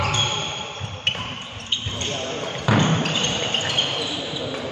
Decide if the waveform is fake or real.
fake